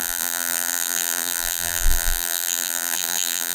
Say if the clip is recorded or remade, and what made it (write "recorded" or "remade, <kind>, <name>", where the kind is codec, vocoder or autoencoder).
remade, vocoder, BigVGAN v2